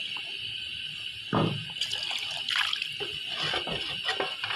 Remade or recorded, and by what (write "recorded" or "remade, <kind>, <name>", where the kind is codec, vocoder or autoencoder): recorded